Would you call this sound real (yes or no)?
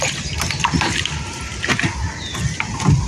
yes